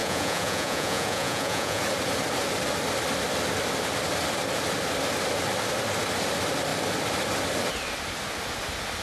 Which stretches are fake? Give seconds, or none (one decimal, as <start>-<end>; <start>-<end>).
0.0-1.8